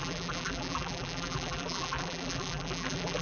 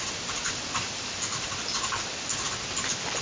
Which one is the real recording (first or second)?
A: second